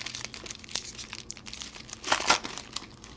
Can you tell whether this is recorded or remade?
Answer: recorded